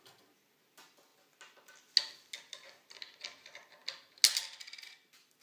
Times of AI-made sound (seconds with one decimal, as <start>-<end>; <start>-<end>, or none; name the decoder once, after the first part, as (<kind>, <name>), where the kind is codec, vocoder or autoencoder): none